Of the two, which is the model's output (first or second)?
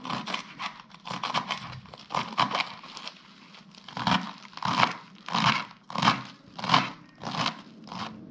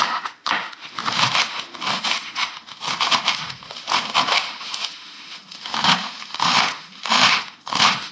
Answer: second